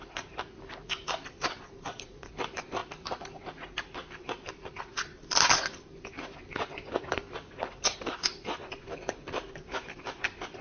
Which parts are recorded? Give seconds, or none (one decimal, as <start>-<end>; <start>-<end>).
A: 2.8-6.7